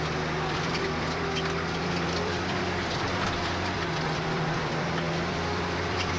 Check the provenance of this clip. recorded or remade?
remade